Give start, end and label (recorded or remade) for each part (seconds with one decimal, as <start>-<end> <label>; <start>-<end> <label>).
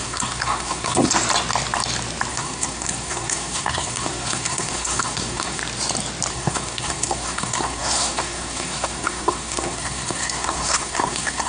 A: 0.0-1.1 remade; 1.1-2.3 recorded; 2.3-5.6 remade; 5.6-6.3 recorded; 6.3-11.5 remade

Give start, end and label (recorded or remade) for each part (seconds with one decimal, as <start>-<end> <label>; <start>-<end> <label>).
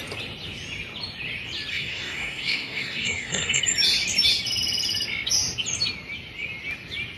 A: 0.0-1.7 recorded; 1.7-3.6 remade; 3.6-7.2 recorded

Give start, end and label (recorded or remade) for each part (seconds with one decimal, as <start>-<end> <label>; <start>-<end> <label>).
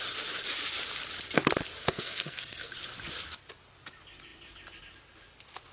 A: 0.0-1.8 recorded; 1.8-2.7 remade; 2.7-5.7 recorded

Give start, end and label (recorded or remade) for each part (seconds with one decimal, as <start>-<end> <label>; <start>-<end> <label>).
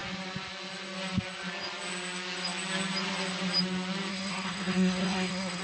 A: 0.0-4.1 recorded; 4.1-5.6 remade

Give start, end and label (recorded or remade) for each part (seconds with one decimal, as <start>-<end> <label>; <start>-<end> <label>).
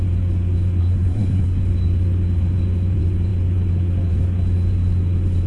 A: 0.0-0.8 recorded; 0.8-1.6 remade; 1.6-5.5 recorded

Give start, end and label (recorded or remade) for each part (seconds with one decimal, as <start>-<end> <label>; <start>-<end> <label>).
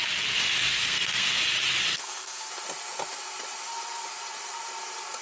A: 0.0-0.7 recorded; 0.7-1.4 remade; 1.4-1.9 recorded; 1.9-2.5 remade; 2.5-5.2 recorded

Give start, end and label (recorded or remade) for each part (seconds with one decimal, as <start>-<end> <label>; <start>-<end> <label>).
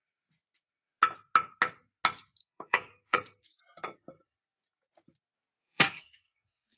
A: 0.0-2.4 recorded; 2.4-3.6 remade; 3.6-5.6 recorded; 5.6-6.8 remade